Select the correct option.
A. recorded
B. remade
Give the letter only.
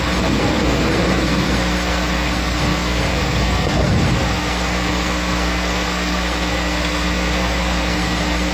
B